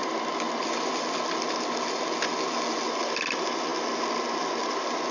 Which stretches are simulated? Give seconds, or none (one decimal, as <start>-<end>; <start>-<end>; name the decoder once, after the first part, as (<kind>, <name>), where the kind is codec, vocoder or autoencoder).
0.0-0.9 (vocoder, BigVGAN v2); 3.0-3.7; 4.4-5.1